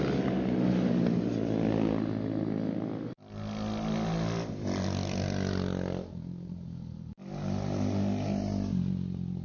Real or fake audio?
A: real